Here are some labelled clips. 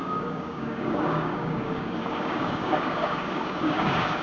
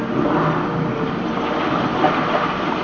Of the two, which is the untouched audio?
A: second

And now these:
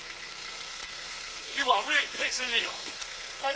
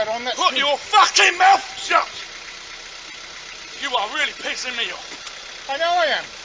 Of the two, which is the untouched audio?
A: second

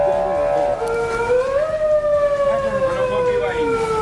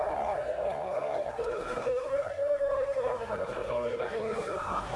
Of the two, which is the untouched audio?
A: first